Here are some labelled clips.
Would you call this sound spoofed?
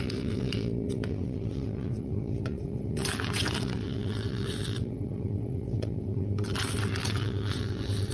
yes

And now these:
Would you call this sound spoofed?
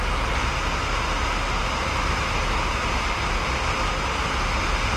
no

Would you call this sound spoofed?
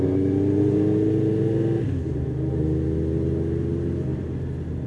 no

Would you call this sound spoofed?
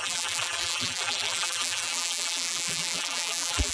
yes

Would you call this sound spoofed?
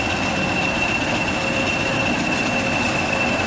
no